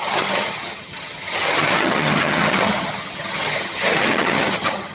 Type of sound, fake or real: fake